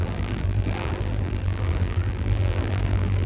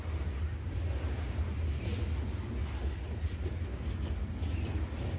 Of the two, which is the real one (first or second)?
second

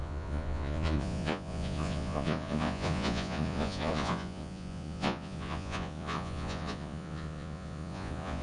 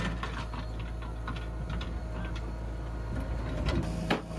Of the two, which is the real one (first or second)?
second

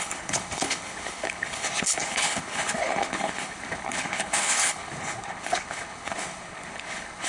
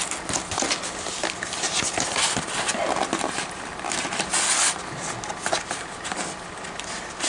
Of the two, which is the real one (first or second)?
second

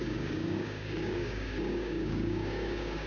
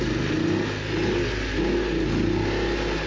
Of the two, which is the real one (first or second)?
second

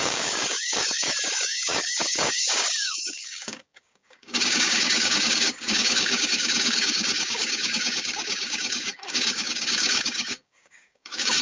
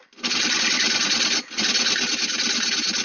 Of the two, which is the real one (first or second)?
second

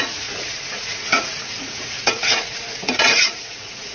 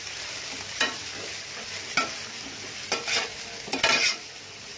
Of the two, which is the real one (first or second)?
second